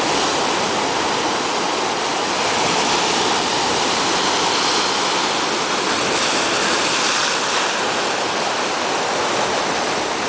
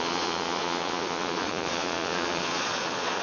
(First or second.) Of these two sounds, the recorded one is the first